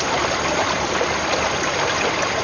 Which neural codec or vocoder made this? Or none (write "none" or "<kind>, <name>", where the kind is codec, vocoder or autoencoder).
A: none